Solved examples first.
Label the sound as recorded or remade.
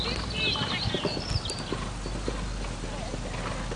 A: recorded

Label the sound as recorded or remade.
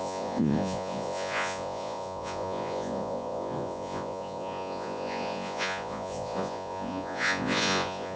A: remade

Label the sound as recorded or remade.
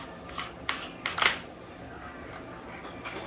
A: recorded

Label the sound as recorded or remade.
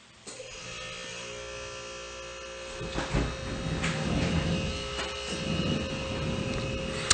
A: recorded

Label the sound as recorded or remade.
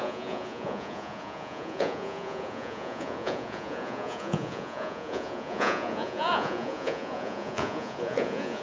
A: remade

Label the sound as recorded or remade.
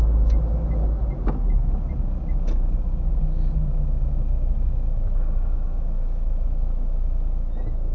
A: recorded